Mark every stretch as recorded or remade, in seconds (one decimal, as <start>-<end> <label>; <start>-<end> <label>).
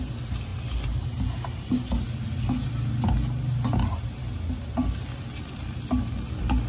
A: 0.0-6.7 recorded